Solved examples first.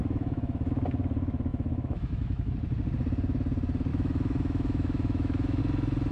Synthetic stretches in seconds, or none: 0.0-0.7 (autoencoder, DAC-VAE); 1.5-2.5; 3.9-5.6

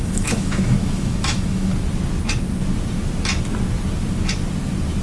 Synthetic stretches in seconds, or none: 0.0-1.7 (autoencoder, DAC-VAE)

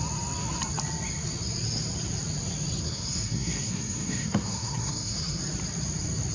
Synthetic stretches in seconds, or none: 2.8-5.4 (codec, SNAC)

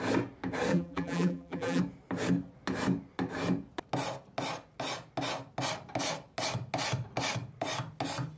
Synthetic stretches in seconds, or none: 0.7-1.8 (vocoder, BigVGAN v2)

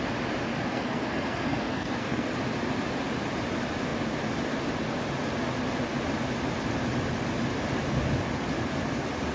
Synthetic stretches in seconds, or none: 0.7-2.3 (codec, SNAC)

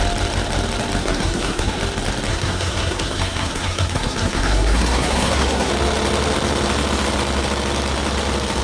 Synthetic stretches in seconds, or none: 1.0-1.8 (codec, SNAC); 2.3-5.7

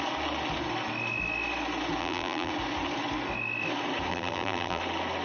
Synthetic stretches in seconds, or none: 2.0-2.5 (vocoder, BigVGAN v2); 4.1-4.8

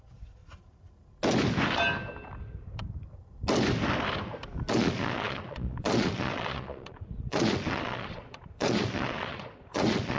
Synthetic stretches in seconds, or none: 0.0-0.4 (vocoder, Vocos); 4.7-10.2